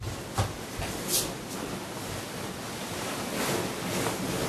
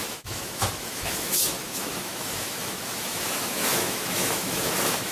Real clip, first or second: first